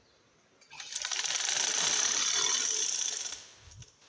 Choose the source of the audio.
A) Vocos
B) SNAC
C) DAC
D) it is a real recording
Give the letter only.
D